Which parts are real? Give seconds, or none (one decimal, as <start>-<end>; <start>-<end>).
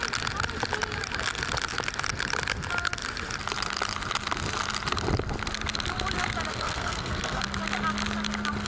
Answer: 0.0-6.5; 7.4-8.7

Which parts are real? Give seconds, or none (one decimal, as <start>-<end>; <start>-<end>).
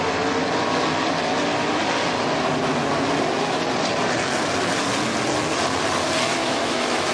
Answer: 0.0-6.4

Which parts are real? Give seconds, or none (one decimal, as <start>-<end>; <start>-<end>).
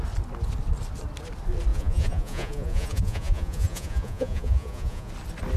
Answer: 0.0-1.7; 5.1-5.6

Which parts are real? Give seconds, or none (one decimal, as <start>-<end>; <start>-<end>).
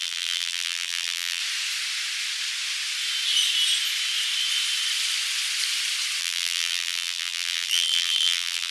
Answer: 1.4-6.2